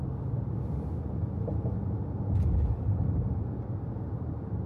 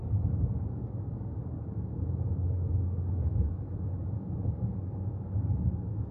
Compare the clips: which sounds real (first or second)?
first